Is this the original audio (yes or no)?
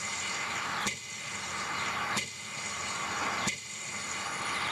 yes